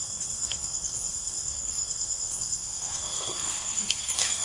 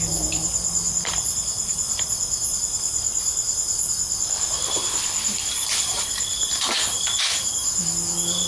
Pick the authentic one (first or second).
second